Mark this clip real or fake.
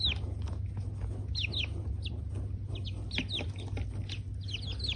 real